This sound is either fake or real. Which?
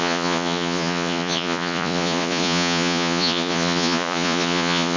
fake